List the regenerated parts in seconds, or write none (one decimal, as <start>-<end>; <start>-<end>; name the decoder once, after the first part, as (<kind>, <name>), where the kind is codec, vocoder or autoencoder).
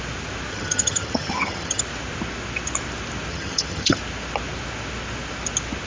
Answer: 0.5-1.8 (vocoder, HiFi-GAN); 3.3-4.0